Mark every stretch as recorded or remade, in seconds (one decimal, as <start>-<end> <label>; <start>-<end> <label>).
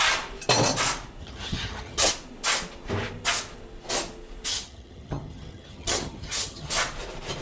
0.0-1.2 recorded; 1.2-2.1 remade; 2.1-4.5 recorded; 4.5-6.7 remade; 6.7-7.4 recorded